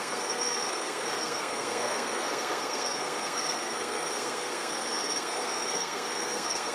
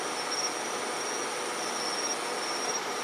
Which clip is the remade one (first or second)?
first